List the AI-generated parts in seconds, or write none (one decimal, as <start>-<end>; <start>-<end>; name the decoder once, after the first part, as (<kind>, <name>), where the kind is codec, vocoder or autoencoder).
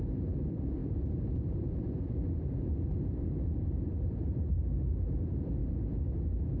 0.0-5.6 (vocoder, BigVGAN v2)